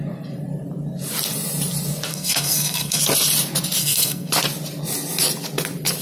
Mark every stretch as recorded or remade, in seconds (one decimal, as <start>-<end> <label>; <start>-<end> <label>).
0.0-2.1 recorded; 2.1-3.0 remade; 3.0-3.8 recorded; 3.8-4.3 remade; 4.3-6.0 recorded